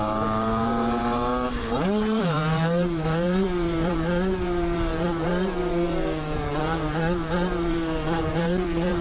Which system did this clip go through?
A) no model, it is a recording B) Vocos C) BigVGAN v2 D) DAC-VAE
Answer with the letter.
C